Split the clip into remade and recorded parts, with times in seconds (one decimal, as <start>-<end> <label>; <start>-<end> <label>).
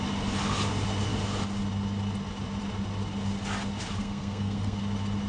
0.0-4.0 recorded; 4.0-4.8 remade; 4.8-5.3 recorded